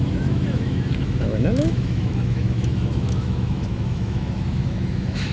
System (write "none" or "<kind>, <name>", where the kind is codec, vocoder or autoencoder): autoencoder, DAC-VAE